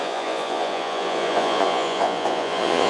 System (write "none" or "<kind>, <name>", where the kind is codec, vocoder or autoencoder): vocoder, Vocos